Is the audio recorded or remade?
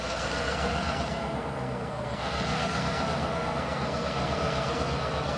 remade